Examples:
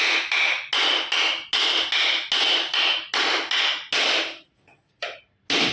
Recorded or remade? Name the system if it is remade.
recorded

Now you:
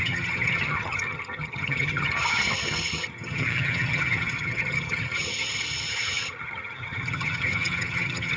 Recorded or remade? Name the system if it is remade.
remade, vocoder, HiFi-GAN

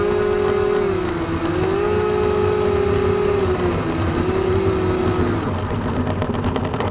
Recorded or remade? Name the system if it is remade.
recorded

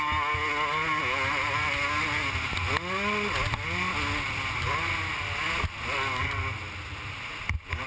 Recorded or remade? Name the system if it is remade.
recorded